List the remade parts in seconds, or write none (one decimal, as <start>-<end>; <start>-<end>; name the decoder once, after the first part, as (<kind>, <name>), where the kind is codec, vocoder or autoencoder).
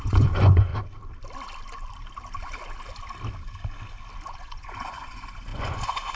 0.0-0.7 (vocoder, Vocos); 4.4-6.2